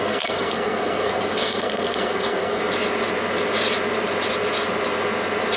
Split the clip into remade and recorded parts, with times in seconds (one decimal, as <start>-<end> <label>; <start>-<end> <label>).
0.0-2.6 remade; 2.6-5.6 recorded